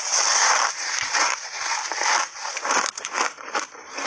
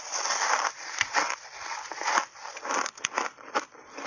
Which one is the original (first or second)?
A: second